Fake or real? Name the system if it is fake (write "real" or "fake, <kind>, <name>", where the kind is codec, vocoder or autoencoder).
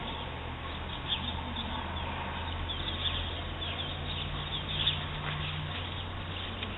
real